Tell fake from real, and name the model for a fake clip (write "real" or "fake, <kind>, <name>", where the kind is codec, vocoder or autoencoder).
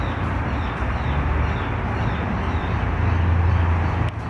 real